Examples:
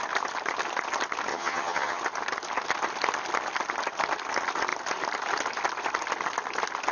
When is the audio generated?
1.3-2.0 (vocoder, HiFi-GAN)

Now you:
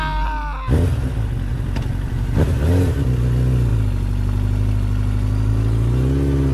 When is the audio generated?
1.5-2.9 (vocoder, BigVGAN v2)

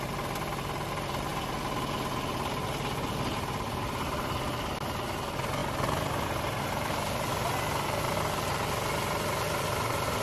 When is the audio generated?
none

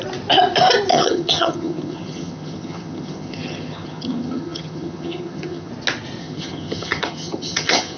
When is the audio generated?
0.9-5.7 (vocoder, HiFi-GAN); 6.2-8.0

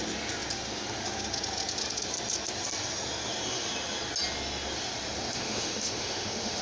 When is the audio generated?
5.2-6.6 (autoencoder, DAC-VAE)

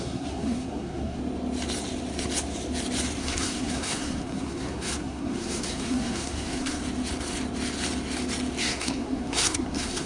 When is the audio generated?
0.0-1.2 (codec, SNAC); 3.2-6.8; 8.6-10.1

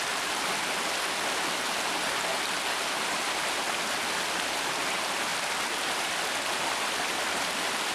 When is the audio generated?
none